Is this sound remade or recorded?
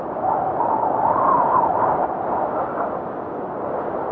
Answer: recorded